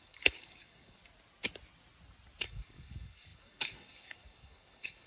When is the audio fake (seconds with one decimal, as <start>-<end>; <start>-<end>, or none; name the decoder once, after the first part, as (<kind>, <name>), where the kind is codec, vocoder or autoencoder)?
0.0-1.0 (codec, DAC); 2.4-5.1